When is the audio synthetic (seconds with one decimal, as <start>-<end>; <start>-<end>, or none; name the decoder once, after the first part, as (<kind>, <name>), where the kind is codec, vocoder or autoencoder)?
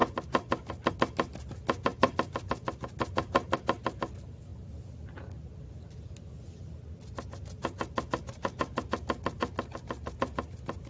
none